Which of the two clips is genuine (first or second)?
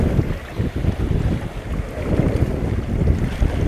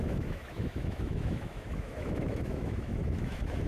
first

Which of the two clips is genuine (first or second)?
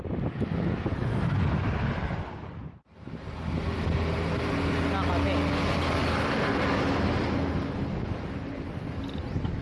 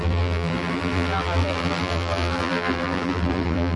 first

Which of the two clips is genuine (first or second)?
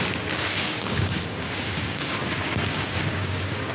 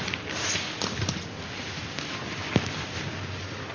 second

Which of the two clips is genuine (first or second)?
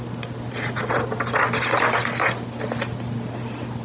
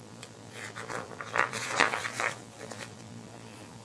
first